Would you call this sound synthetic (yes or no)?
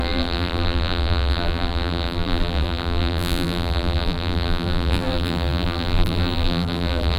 yes